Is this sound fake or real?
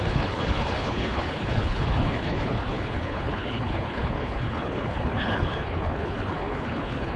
fake